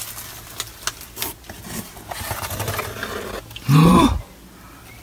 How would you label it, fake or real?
real